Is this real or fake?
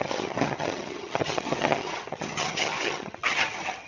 fake